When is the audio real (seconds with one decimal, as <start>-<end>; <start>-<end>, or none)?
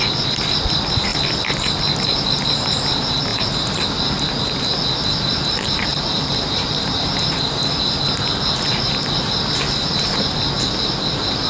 0.0-5.9; 7.4-11.5